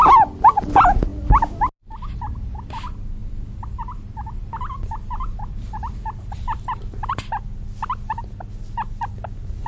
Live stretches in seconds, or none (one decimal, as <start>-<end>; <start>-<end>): 0.0-3.2; 7.1-9.7